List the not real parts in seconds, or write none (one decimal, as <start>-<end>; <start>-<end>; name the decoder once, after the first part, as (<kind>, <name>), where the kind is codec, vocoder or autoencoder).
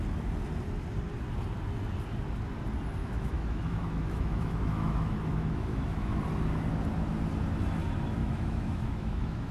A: 3.0-6.2 (autoencoder, DAC-VAE); 8.2-9.5